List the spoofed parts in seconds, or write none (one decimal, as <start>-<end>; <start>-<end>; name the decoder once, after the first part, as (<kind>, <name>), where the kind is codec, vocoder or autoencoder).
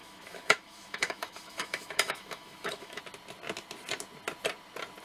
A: 0.0-3.0 (autoencoder, DAC-VAE)